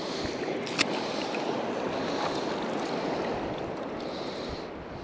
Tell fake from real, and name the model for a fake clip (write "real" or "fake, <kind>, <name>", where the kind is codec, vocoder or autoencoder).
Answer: real